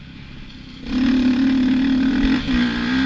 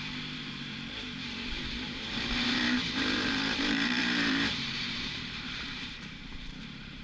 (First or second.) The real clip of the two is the first